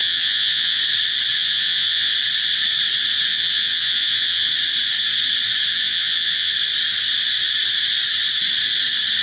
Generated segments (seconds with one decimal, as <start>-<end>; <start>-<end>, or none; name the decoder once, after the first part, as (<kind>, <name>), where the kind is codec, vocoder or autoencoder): 0.0-0.8 (vocoder, Vocos); 1.4-2.1; 3.3-4.5; 5.7-6.5